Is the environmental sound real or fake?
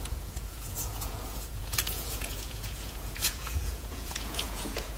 fake